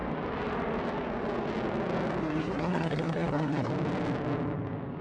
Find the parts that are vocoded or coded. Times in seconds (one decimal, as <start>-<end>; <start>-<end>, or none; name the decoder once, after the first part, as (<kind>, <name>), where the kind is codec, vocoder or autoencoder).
2.2-3.7 (codec, SNAC)

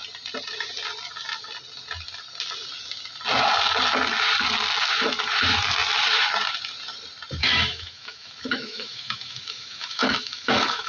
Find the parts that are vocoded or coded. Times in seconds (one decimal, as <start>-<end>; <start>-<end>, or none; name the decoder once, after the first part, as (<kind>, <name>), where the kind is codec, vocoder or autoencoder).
7.4-10.9 (autoencoder, DAC-VAE)

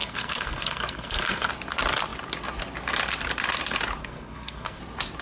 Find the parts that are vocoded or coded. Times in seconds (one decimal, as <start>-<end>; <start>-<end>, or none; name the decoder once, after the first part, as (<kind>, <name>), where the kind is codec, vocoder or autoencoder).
0.0-1.5 (codec, SNAC); 4.0-4.8

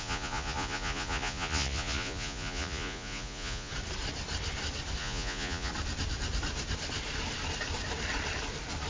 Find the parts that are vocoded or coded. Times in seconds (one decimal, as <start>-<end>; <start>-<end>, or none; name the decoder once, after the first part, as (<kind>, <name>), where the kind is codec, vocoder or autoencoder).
0.0-3.7 (vocoder, Vocos); 5.0-5.7

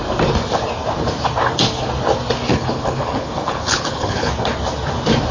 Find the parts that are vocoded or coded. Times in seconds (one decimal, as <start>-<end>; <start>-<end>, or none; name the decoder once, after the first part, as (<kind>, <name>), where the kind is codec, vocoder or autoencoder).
2.5-4.3 (codec, HILCodec)

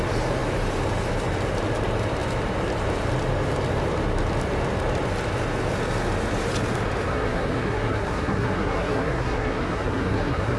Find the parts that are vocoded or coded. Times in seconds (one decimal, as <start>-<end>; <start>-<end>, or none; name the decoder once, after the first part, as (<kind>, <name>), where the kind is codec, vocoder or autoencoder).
7.1-10.6 (codec, SNAC)

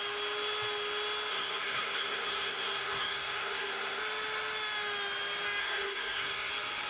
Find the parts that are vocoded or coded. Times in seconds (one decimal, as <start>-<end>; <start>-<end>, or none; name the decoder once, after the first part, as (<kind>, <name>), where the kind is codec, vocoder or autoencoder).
1.3-4.0 (codec, SNAC); 5.6-6.5

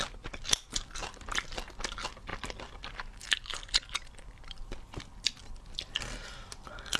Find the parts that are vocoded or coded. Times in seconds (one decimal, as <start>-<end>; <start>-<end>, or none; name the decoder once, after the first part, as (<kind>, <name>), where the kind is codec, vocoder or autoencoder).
none